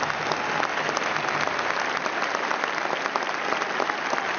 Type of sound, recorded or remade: recorded